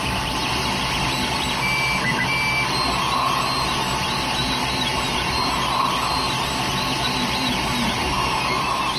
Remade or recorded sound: recorded